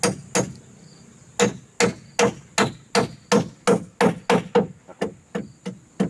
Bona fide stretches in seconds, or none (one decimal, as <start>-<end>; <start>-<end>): 0.0-6.1